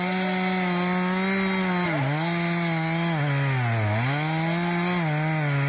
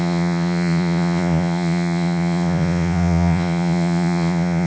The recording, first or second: first